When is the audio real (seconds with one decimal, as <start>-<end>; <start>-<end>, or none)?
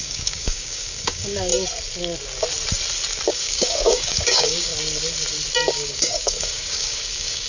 1.5-3.3; 4.7-5.7